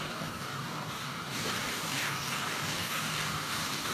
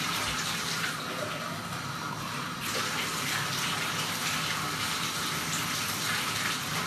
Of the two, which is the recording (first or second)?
second